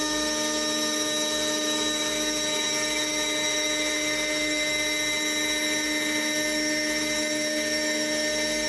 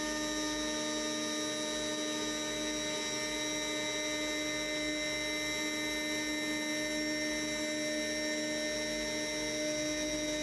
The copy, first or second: first